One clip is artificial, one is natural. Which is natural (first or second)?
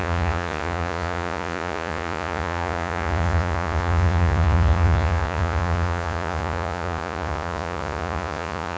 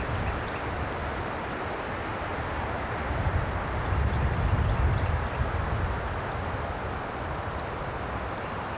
second